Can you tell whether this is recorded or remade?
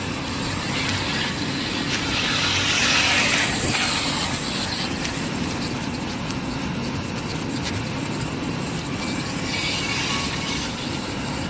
recorded